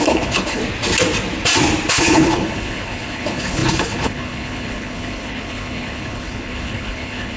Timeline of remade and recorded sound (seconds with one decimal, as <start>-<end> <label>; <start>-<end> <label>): 0.0-0.6 remade; 0.6-1.9 recorded; 1.9-7.4 remade

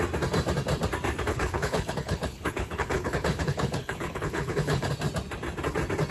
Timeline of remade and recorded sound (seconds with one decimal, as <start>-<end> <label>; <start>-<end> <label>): 0.0-1.3 recorded; 1.3-4.9 remade; 4.9-6.1 recorded